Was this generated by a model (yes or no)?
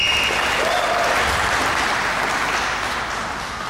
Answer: no